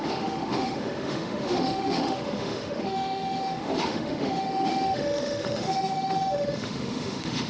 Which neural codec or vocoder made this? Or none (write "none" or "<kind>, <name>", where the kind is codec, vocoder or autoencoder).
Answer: autoencoder, DAC-VAE